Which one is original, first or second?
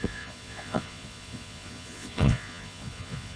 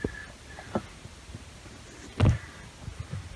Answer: second